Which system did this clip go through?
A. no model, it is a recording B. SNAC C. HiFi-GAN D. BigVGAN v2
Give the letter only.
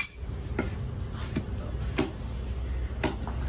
A